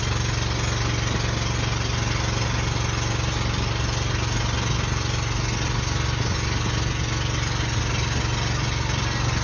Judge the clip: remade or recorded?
recorded